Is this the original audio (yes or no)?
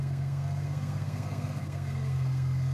no